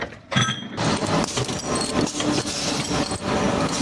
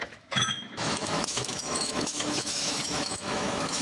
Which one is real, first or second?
first